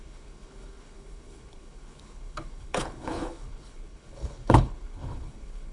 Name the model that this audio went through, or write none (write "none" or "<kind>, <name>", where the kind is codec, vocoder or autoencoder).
codec, HILCodec